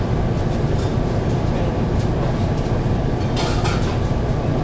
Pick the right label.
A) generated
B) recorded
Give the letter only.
B